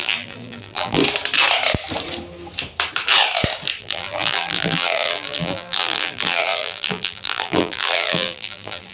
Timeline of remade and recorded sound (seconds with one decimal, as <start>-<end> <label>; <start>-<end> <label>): 0.0-1.0 remade; 1.0-3.8 recorded; 3.8-8.9 remade

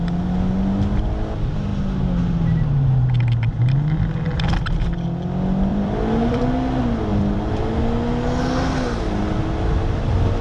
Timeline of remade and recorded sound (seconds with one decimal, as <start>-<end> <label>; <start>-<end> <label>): 0.0-5.7 recorded; 5.7-6.4 remade; 6.4-7.1 recorded; 7.1-7.6 remade; 7.6-10.4 recorded

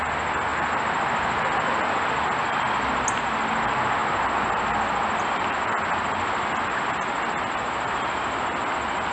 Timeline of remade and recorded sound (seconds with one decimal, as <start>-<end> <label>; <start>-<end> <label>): 0.0-0.5 recorded; 0.5-2.0 remade; 2.0-9.1 recorded

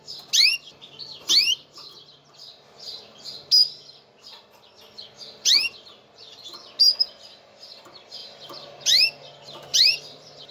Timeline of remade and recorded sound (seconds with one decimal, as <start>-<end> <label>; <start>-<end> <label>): 0.0-0.7 recorded; 0.7-3.2 remade; 3.2-8.2 recorded; 8.2-8.8 remade; 8.8-9.7 recorded; 9.7-10.5 remade

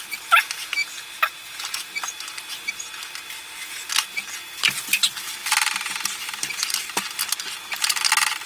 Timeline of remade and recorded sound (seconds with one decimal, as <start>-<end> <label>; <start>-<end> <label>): 0.0-0.8 recorded; 0.8-2.1 remade; 2.1-8.5 recorded